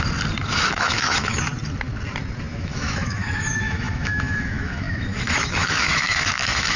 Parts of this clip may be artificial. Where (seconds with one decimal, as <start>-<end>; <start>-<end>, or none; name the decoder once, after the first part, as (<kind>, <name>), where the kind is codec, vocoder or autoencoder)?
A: 0.5-1.4 (autoencoder, DAC-VAE); 2.5-6.8